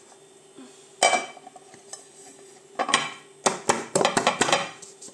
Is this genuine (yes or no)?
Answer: yes